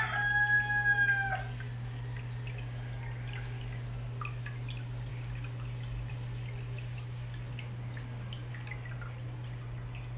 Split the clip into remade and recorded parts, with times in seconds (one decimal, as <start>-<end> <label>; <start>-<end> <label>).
0.0-10.2 recorded